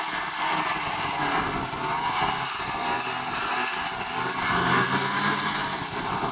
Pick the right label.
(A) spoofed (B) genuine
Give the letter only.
B